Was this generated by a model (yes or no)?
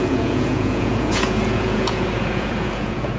yes